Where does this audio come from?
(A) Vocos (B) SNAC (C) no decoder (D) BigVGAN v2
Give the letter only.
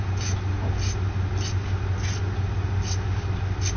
C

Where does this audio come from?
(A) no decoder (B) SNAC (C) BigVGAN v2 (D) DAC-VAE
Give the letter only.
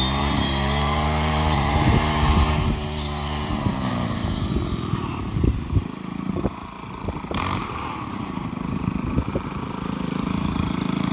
C